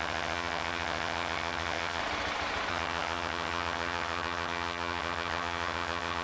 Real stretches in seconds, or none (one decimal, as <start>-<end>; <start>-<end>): 2.0-2.7